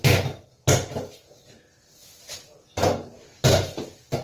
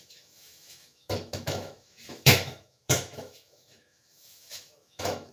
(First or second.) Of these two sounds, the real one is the first